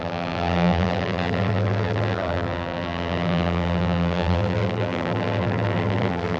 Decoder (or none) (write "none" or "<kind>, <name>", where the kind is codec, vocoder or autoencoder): vocoder, BigVGAN v2